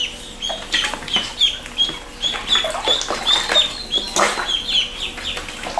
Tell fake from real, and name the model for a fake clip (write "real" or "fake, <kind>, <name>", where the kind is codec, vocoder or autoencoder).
real